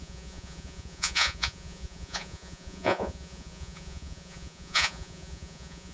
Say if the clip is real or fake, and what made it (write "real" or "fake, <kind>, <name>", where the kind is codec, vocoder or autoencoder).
fake, vocoder, Vocos